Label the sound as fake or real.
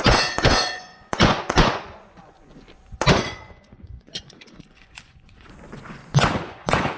fake